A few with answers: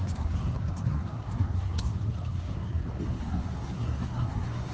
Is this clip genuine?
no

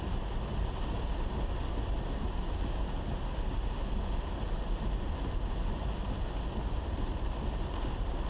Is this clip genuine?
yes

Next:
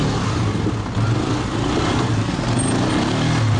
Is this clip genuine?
yes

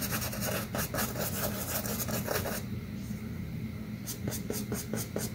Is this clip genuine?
yes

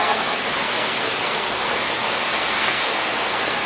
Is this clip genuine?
no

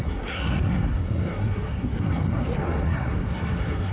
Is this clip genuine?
no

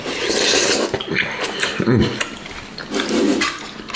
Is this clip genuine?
yes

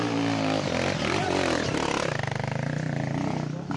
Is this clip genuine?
yes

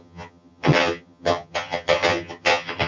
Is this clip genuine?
no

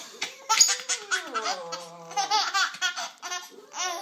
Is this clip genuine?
yes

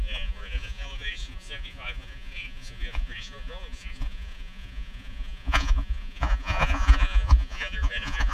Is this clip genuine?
no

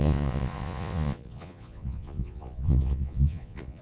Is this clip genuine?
no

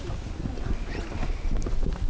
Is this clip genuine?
yes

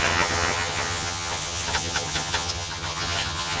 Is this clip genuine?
no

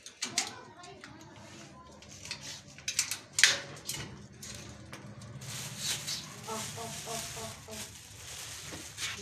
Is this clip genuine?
yes